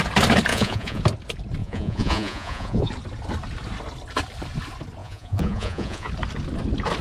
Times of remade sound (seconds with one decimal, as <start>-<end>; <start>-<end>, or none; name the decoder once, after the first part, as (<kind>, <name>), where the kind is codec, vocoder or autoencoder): 0.5-1.0 (vocoder, Vocos); 1.6-2.9; 5.0-6.1